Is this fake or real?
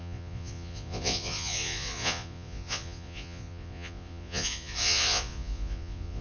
fake